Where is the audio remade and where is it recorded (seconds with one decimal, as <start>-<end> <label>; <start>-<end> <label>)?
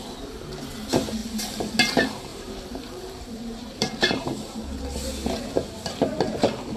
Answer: 0.0-2.3 recorded; 2.3-4.8 remade; 4.8-6.8 recorded